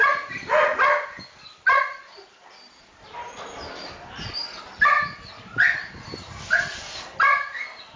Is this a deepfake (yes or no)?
no